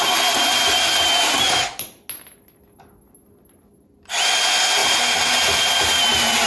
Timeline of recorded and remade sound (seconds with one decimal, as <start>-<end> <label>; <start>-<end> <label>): 0.0-6.5 recorded